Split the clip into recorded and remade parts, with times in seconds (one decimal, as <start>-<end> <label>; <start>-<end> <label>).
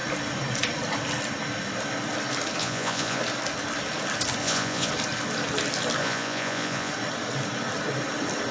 0.0-2.6 recorded; 2.6-3.2 remade; 3.2-4.4 recorded; 4.4-4.9 remade; 4.9-6.0 recorded; 6.0-6.9 remade; 6.9-8.5 recorded